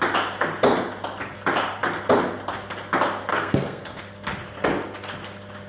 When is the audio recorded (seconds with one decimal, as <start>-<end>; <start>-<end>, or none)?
0.0-3.3; 4.0-5.7